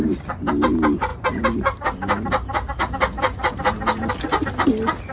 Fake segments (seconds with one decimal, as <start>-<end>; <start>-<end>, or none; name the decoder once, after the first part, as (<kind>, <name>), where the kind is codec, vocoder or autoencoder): 1.1-4.1 (vocoder, BigVGAN v2)